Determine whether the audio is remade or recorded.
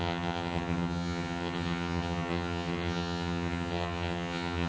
remade